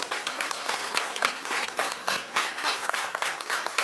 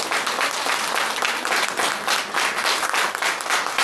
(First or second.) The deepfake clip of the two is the first